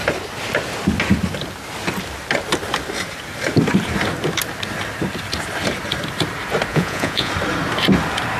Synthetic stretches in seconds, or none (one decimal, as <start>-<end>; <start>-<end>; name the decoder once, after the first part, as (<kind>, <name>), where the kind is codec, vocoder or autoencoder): 6.7-7.3 (vocoder, Vocos)